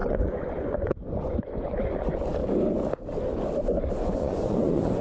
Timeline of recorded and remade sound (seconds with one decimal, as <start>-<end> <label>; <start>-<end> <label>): 0.0-2.4 remade; 2.4-4.0 recorded; 4.0-5.0 remade